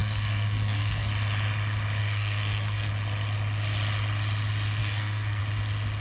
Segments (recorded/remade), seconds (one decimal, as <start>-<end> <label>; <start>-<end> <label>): 0.0-1.1 remade; 1.1-2.0 recorded; 2.0-2.9 remade; 2.9-4.8 recorded; 4.8-5.4 remade; 5.4-6.0 recorded

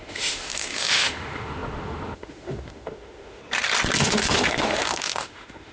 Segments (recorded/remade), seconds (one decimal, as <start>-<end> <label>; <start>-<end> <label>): 0.0-3.4 remade; 3.4-4.0 recorded; 4.0-5.7 remade

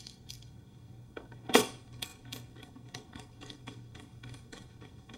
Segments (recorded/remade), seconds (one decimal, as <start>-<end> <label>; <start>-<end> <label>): 0.0-5.2 remade

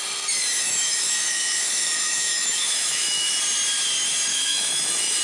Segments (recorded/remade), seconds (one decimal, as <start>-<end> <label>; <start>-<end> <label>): 0.0-0.6 recorded; 0.6-3.4 remade; 3.4-4.3 recorded; 4.3-5.2 remade

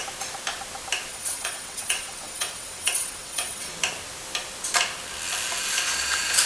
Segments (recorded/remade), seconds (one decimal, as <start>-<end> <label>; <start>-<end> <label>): 0.0-1.1 recorded; 1.1-3.7 remade; 3.7-6.5 recorded

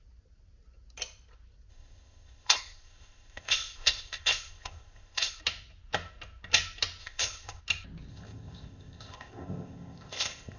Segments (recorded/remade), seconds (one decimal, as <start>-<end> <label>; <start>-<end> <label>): 0.0-1.7 recorded; 1.7-5.4 remade; 5.4-7.0 recorded; 7.0-7.6 remade; 7.6-8.1 recorded; 8.1-10.6 remade

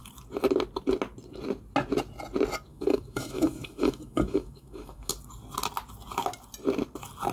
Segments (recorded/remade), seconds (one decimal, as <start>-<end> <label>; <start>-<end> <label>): 0.0-2.7 recorded; 2.7-5.1 remade; 5.1-7.3 recorded